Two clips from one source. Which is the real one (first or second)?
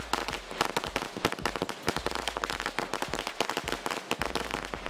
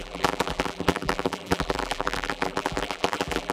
first